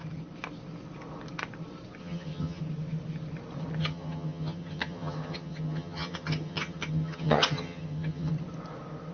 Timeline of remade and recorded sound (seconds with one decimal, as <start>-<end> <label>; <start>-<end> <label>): 0.0-2.0 recorded; 2.0-2.6 remade; 2.6-3.8 recorded; 3.8-8.3 remade; 8.3-9.1 recorded

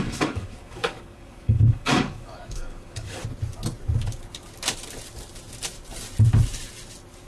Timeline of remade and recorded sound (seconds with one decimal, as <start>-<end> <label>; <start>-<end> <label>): 0.0-3.2 remade; 3.2-7.3 recorded

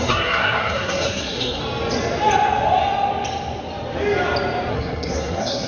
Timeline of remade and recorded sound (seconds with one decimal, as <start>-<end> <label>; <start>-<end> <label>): 0.0-1.6 remade; 1.6-4.7 recorded; 4.7-5.7 remade

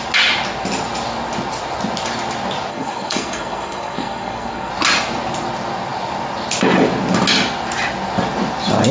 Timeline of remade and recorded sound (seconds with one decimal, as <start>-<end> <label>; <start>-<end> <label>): 0.0-2.7 recorded; 2.7-4.7 remade; 4.7-8.9 recorded

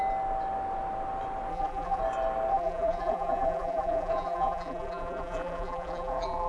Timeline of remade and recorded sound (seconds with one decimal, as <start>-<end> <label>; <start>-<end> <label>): 0.0-1.5 recorded; 1.5-2.0 remade; 2.0-2.5 recorded; 2.5-6.5 remade